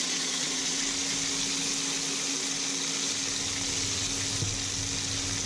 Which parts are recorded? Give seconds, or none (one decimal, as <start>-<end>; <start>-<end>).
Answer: 0.8-5.5